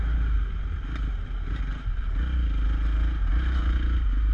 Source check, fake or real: real